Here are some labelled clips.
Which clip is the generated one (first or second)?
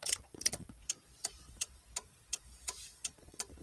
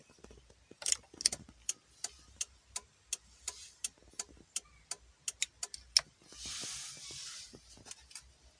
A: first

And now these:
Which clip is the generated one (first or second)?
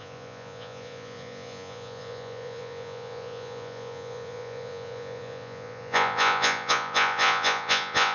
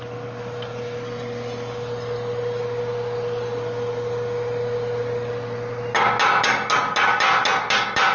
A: first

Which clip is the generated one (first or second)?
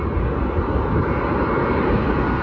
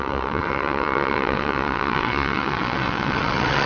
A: second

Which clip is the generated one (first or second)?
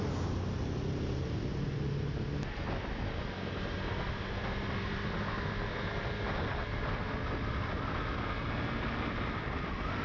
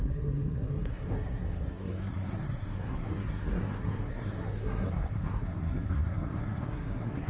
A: second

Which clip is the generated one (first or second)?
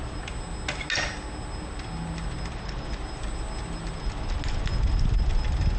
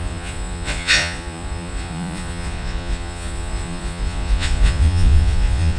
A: second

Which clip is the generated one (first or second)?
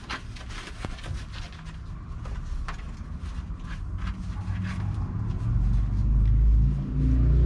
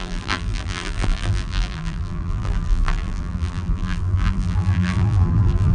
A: second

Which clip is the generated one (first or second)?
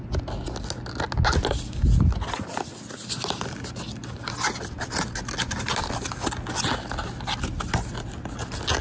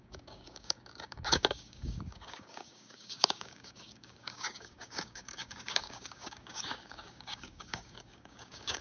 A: second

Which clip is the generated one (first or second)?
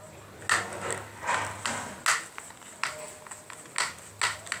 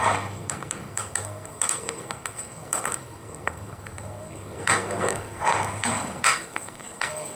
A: second